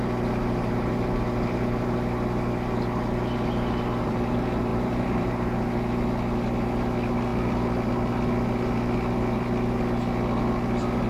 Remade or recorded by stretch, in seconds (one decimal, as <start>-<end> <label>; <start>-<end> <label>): 0.0-4.7 recorded; 4.7-5.3 remade; 5.3-11.1 recorded